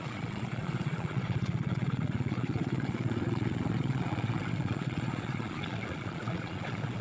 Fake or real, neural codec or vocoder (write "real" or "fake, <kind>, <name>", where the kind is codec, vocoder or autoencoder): fake, vocoder, Vocos